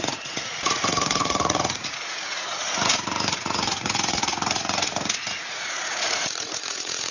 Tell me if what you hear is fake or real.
fake